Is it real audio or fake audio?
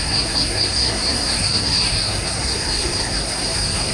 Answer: fake